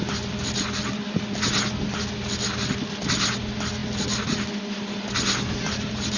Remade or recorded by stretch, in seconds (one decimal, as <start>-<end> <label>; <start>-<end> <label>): 0.0-6.2 recorded